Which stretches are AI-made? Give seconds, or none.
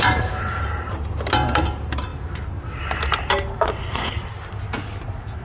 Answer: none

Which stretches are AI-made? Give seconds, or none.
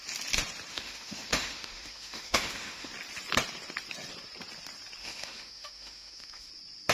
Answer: 0.7-2.9; 5.0-6.5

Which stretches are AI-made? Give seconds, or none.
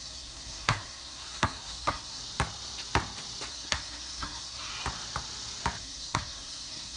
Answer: 0.0-2.2; 3.5-4.7; 5.8-7.0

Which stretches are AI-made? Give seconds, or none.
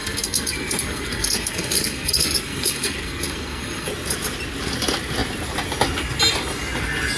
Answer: 0.0-3.9